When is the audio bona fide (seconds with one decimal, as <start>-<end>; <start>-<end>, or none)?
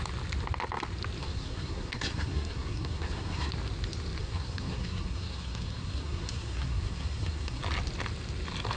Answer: 0.0-1.2; 3.5-4.2; 7.6-8.8